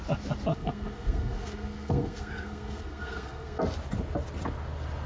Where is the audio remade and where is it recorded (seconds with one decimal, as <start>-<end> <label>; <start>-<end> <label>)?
0.0-0.5 recorded; 0.5-3.6 remade; 3.6-5.1 recorded